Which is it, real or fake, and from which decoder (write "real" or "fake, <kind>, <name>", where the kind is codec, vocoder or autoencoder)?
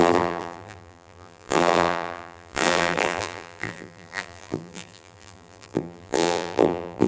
fake, vocoder, BigVGAN v2